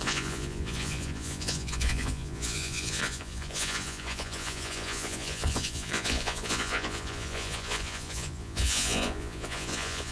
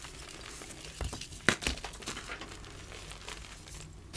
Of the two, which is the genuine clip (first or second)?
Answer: second